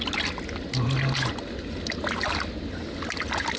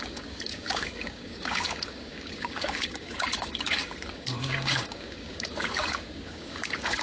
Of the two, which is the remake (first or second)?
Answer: second